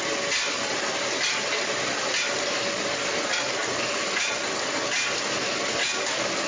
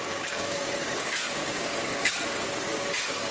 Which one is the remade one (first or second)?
second